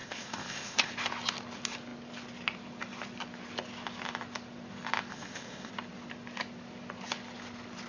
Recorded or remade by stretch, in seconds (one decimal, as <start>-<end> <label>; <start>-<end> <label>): 0.0-0.9 remade; 0.9-5.1 recorded; 5.1-5.7 remade; 5.7-7.9 recorded